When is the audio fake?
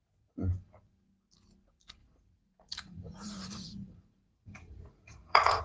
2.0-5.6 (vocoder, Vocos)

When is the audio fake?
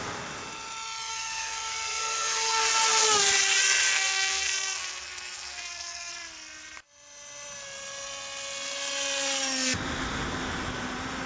1.1-2.6 (codec, SNAC); 3.8-6.1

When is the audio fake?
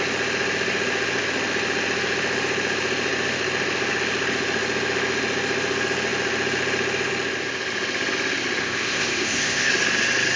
8.6-9.7 (codec, ZipCodec)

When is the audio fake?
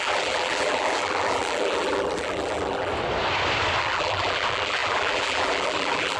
0.0-2.9 (vocoder, BigVGAN v2); 3.8-6.2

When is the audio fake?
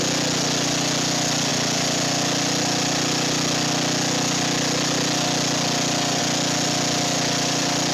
none